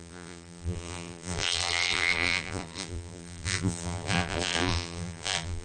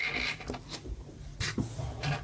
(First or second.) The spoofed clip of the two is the first